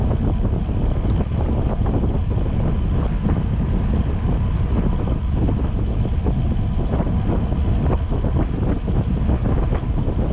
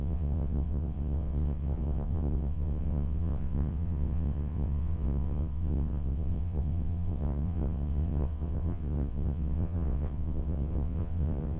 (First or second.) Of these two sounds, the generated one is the second